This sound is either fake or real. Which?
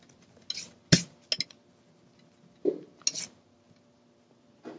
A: real